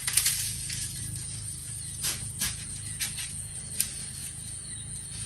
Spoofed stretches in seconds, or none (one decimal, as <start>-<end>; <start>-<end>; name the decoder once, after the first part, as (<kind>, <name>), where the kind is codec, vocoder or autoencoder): 0.0-1.0 (vocoder, Vocos); 1.6-3.6; 4.2-5.3